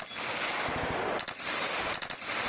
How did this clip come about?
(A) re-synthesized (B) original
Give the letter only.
B